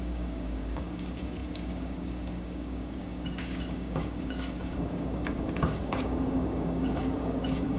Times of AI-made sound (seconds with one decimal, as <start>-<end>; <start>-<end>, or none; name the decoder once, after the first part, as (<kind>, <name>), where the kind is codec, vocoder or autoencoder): 0.0-7.8 (codec, DAC)